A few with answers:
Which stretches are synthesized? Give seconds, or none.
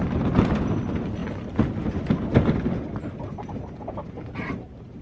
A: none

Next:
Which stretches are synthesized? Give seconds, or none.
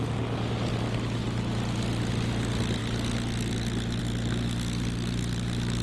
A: none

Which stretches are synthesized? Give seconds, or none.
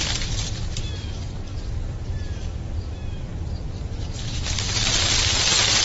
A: 0.0-1.5 (vocoder, BigVGAN v2); 2.8-3.3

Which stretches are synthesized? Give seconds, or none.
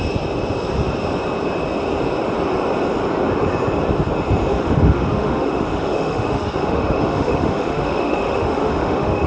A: 4.5-9.3 (autoencoder, DAC-VAE)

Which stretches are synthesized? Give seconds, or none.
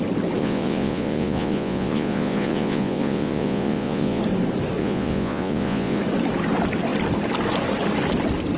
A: 0.4-4.2 (vocoder, Vocos); 4.8-6.0